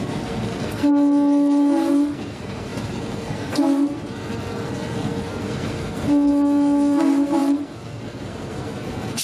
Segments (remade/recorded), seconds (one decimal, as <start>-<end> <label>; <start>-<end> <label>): 0.0-9.2 remade